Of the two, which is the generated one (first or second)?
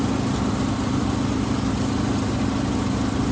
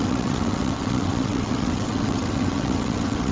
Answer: second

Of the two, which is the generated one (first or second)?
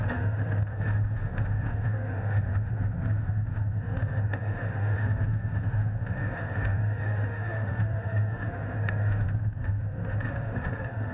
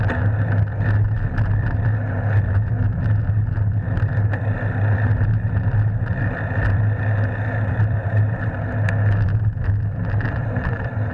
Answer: first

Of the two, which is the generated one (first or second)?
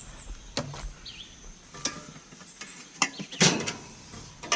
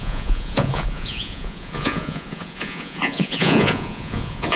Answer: second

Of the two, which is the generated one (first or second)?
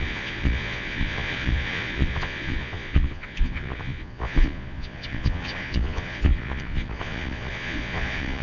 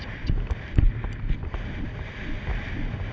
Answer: first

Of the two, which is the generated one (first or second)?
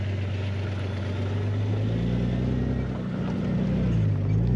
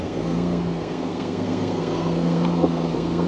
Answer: second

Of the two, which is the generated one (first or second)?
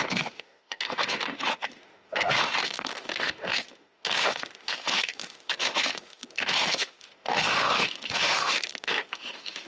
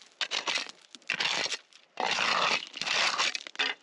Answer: first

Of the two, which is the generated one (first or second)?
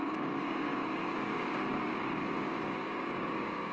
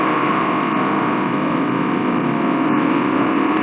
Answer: first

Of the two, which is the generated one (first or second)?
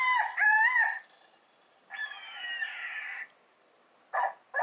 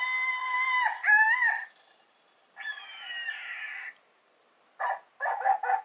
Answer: first